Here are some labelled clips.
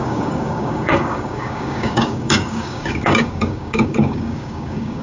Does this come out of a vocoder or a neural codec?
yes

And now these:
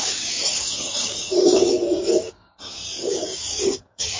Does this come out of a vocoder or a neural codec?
yes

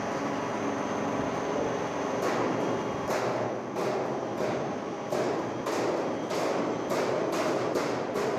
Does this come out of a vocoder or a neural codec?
no